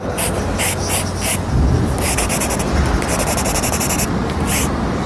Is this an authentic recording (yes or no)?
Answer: yes